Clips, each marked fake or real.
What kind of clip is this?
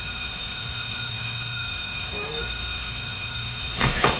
fake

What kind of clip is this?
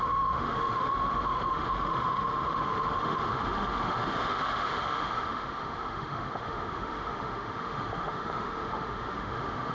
fake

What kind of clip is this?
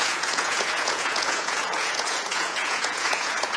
fake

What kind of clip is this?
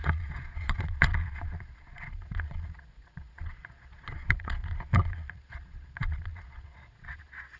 fake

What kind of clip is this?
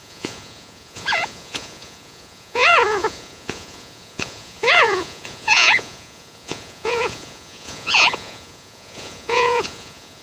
fake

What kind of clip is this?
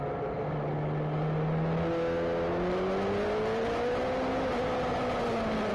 real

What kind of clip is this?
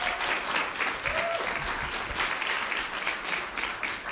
real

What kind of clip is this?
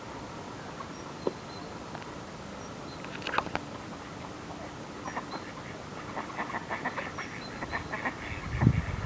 real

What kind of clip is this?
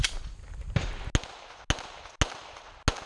real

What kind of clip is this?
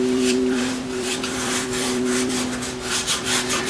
fake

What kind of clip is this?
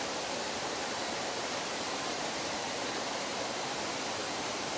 fake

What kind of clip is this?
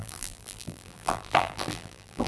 fake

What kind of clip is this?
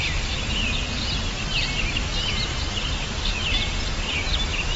real